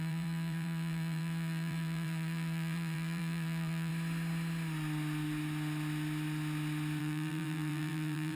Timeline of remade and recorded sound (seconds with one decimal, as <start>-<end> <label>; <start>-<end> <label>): 0.0-3.9 remade; 3.9-7.0 recorded; 7.0-8.3 remade